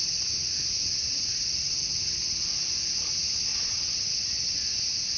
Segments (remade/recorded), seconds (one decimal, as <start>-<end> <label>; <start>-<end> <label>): 0.0-3.5 recorded; 3.5-4.6 remade; 4.6-5.2 recorded